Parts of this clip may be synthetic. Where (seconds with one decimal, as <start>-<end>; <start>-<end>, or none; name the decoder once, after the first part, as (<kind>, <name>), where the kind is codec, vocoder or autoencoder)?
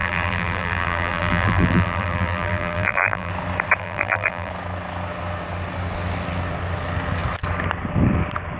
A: 0.0-3.3 (vocoder, BigVGAN v2); 3.8-4.5